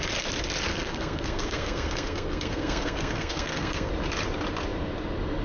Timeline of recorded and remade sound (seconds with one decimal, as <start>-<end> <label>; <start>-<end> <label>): 0.0-0.7 recorded; 0.7-3.9 remade; 3.9-5.4 recorded